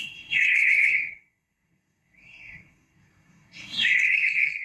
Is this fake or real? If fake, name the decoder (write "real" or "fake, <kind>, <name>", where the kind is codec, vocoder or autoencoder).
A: fake, codec, SNAC